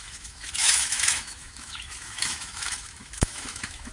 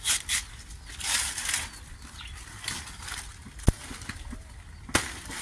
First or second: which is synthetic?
first